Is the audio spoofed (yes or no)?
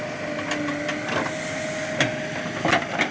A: no